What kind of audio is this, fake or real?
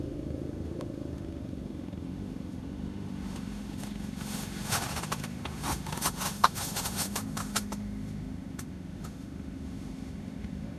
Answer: fake